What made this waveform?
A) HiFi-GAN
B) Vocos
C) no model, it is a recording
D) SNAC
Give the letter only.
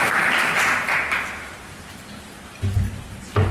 C